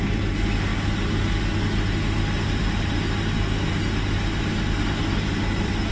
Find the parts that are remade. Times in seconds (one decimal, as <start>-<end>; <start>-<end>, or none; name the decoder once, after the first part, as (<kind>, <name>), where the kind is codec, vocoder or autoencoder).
none